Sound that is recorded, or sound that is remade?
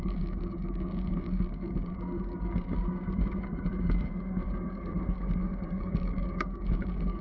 remade